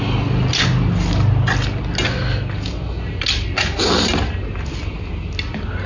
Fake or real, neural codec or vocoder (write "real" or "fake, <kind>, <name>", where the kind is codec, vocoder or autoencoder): real